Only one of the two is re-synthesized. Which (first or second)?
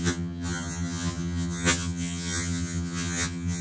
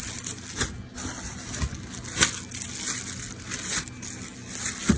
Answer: first